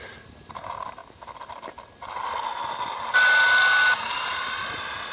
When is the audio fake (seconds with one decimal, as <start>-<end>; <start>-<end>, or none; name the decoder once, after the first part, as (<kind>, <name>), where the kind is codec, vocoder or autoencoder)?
0.0-1.0 (vocoder, BigVGAN v2); 4.1-5.1